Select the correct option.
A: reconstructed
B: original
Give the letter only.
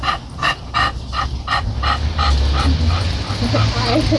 B